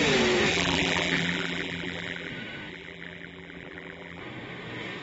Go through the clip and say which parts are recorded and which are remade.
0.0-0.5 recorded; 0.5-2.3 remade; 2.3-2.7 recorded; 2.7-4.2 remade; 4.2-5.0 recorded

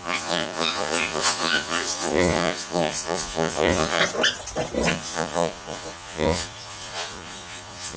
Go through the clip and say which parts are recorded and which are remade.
0.0-4.0 remade; 4.0-4.9 recorded; 4.9-8.0 remade

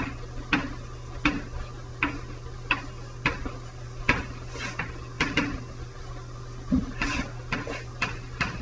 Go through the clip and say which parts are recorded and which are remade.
0.0-8.6 recorded